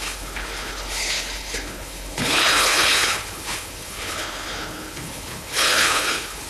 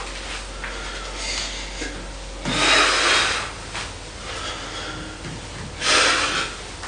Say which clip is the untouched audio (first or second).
second